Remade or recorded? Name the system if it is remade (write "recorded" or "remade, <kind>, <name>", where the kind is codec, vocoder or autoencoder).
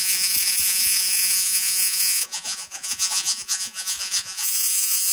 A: remade, vocoder, Vocos